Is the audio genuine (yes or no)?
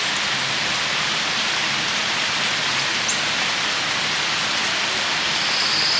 yes